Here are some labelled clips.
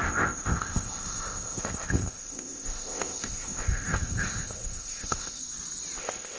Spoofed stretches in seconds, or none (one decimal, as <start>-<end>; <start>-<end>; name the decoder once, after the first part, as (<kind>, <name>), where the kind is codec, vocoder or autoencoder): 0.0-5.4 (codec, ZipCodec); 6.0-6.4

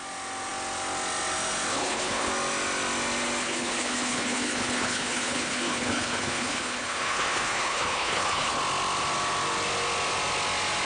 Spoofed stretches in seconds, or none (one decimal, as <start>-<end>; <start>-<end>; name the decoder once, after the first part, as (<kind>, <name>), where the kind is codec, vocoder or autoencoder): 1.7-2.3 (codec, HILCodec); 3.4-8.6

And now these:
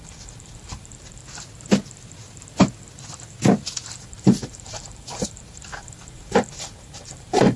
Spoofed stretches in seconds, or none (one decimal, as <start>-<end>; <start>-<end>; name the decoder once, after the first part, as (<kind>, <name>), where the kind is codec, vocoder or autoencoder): 0.0-1.2 (vocoder, BigVGAN v2); 4.0-7.6

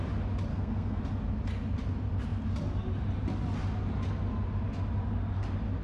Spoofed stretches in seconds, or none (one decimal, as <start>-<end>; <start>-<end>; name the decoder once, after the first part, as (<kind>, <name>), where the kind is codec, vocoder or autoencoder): 0.5-1.0 (codec, SNAC)

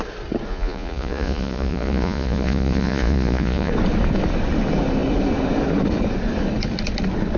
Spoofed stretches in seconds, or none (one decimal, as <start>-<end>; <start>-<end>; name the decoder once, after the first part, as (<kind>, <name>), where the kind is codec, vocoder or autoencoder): 0.5-3.7 (vocoder, Vocos)

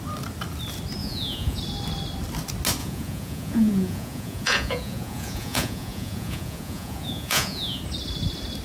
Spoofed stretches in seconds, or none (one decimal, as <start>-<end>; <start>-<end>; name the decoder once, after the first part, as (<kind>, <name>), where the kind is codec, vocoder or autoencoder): 1.0-1.6 (vocoder, Vocos); 2.8-7.8